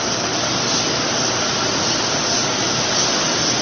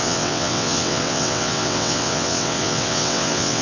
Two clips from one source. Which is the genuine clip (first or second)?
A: first